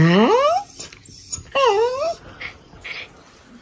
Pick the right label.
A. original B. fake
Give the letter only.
A